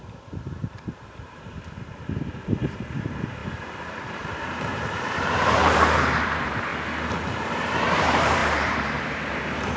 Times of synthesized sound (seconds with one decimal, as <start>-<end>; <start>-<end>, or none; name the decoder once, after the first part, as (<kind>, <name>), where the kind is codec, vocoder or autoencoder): 0.0-6.7 (vocoder, BigVGAN v2); 7.3-9.8